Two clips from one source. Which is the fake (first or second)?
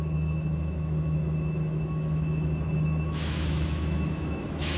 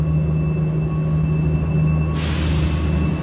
first